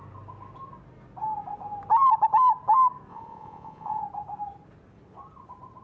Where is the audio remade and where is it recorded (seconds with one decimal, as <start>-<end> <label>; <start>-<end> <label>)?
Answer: 0.0-3.1 recorded; 3.1-4.0 remade; 4.0-5.8 recorded

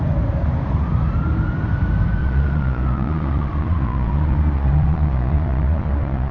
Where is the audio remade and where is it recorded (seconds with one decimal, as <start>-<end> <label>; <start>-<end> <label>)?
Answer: 0.0-2.2 recorded; 2.2-6.3 remade

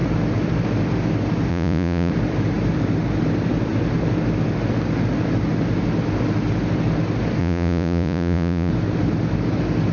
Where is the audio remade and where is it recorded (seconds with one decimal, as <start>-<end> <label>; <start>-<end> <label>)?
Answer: 0.0-1.5 recorded; 1.5-2.1 remade; 2.1-7.4 recorded; 7.4-8.7 remade; 8.7-9.9 recorded

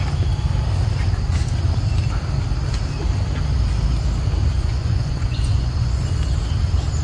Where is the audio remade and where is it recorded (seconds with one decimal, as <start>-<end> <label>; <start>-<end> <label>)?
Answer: 0.0-4.5 recorded; 4.5-6.0 remade; 6.0-7.0 recorded

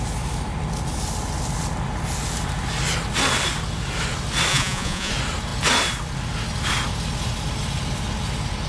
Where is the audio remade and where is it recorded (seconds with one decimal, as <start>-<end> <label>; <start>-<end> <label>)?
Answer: 0.0-4.5 recorded; 4.5-5.1 remade; 5.1-8.7 recorded